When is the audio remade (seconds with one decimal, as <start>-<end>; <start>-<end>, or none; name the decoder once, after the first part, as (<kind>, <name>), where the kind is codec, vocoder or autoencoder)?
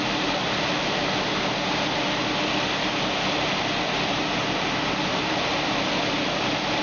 0.0-1.0 (vocoder, BigVGAN v2); 5.1-5.5